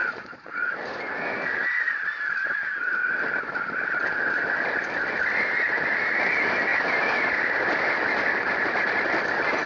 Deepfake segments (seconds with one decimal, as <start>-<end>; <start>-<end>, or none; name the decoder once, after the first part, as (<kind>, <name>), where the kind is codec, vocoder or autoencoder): 0.0-0.7 (vocoder, Vocos)